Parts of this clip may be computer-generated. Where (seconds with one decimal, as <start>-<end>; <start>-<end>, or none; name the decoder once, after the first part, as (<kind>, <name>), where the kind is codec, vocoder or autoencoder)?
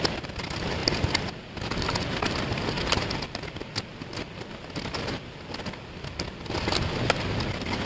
none